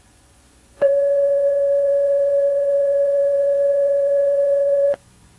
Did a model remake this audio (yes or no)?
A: yes